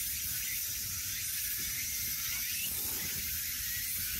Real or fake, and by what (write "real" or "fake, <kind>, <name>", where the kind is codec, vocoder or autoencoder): real